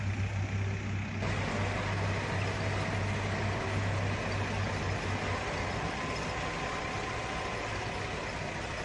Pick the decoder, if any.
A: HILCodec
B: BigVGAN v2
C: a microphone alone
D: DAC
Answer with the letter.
C